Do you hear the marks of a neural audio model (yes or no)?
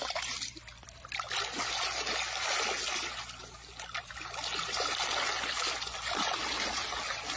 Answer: no